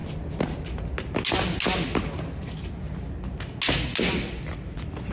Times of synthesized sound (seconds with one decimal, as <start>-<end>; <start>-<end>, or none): none